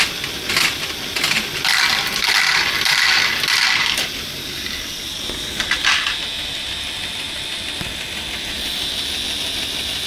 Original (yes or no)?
yes